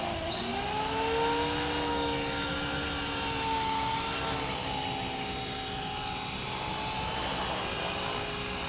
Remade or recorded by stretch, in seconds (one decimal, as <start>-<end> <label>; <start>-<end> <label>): 0.0-8.7 recorded